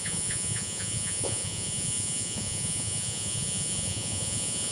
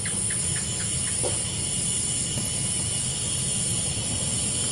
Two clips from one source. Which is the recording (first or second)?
second